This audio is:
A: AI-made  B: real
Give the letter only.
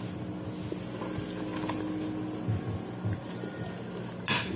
B